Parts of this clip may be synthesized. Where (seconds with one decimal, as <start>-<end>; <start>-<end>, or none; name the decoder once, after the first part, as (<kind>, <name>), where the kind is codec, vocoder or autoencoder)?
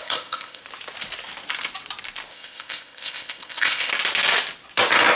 0.0-0.6 (codec, ZipCodec); 2.3-3.9